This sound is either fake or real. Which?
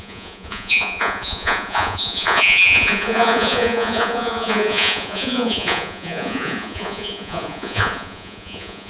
fake